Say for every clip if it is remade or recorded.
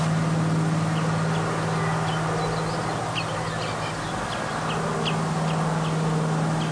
recorded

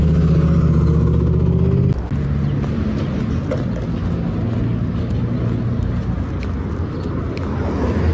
recorded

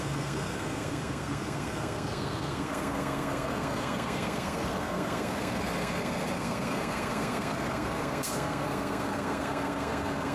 remade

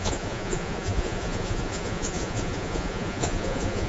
remade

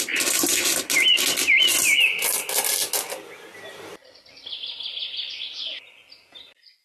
recorded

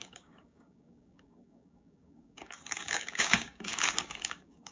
remade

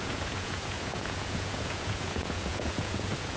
remade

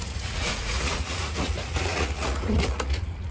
remade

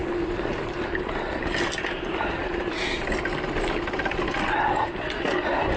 recorded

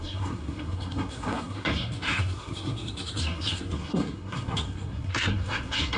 remade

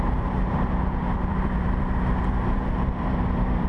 remade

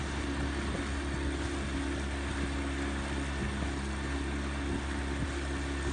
recorded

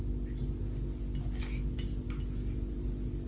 recorded